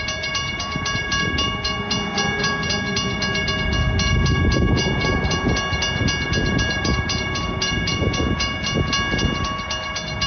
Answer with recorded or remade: recorded